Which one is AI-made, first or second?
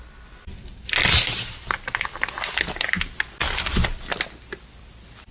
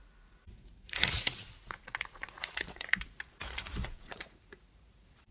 second